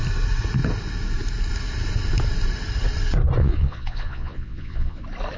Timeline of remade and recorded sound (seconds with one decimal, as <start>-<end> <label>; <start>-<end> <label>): 0.0-3.4 recorded; 3.4-5.0 remade; 5.0-5.4 recorded